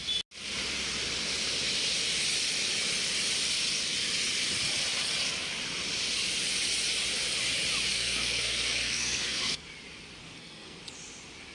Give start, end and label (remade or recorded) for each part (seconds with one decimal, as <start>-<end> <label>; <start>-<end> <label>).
0.0-7.9 recorded; 7.9-9.7 remade; 9.7-10.2 recorded; 10.2-10.8 remade; 10.8-11.5 recorded